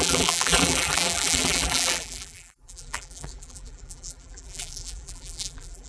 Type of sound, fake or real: fake